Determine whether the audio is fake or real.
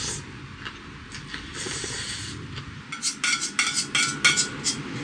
real